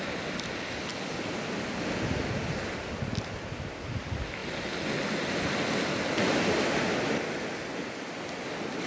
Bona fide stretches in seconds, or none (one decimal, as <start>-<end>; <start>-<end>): 0.0-8.9